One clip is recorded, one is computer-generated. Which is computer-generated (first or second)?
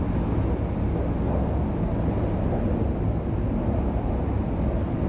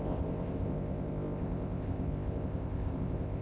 second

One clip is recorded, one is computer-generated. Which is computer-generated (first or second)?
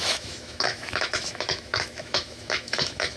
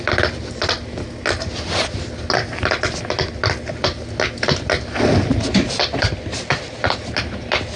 first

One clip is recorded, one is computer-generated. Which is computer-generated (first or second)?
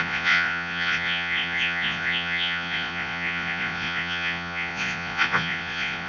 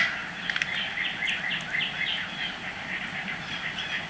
first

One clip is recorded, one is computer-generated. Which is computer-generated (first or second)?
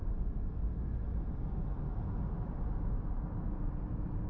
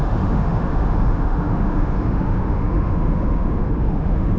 second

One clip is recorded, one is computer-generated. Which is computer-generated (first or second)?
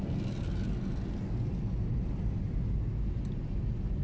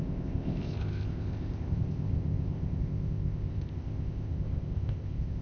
second